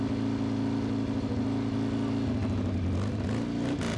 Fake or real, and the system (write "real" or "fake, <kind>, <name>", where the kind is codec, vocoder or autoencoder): real